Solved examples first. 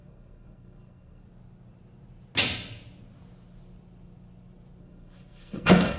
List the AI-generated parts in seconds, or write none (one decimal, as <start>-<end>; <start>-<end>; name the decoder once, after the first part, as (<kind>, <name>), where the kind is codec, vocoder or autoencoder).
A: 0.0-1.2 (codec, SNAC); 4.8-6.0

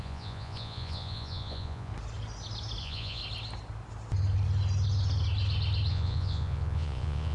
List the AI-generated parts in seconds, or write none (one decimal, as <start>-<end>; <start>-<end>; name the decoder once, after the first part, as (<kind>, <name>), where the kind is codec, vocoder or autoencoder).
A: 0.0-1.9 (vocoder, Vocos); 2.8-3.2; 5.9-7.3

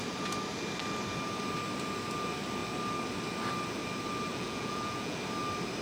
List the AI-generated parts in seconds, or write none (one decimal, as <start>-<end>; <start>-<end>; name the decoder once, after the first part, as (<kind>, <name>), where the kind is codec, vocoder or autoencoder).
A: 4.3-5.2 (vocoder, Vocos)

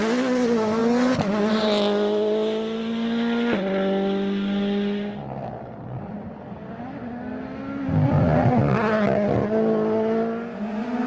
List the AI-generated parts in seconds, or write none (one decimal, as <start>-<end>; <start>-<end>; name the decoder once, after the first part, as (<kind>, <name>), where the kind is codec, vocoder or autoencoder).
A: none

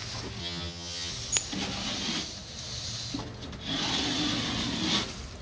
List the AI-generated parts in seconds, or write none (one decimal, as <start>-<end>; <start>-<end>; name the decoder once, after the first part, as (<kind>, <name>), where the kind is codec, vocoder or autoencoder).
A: 0.4-1.1 (vocoder, HiFi-GAN)

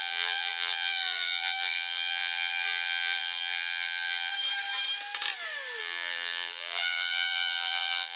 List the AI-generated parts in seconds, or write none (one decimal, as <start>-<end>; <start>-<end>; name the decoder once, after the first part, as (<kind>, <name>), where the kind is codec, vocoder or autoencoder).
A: 0.0-4.3 (vocoder, BigVGAN v2); 5.8-8.2